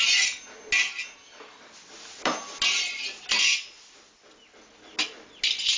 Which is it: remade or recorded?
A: recorded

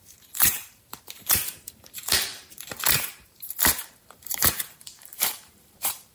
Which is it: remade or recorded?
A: remade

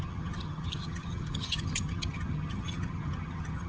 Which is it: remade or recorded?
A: remade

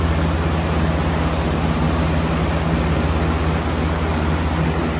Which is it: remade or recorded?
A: recorded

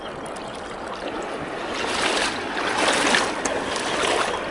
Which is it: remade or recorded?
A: recorded